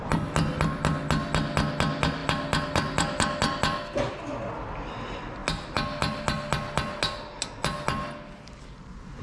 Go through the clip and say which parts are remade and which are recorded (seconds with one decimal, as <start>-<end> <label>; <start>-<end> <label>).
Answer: 0.0-9.2 recorded